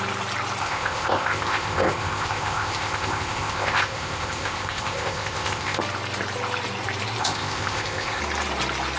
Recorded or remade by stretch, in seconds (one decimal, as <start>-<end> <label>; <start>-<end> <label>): 0.0-0.6 recorded; 0.6-5.8 remade; 5.8-7.2 recorded; 7.2-8.2 remade; 8.2-9.0 recorded